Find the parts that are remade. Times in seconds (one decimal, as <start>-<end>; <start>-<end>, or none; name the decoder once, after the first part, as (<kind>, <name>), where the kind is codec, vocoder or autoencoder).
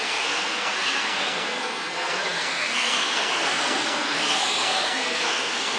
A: 0.0-5.8 (codec, SNAC)